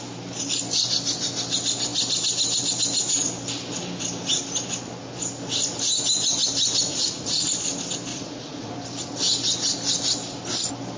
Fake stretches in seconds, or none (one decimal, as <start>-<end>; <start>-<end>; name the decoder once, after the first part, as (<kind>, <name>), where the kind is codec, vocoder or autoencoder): 6.9-7.5 (vocoder, Vocos); 8.1-8.7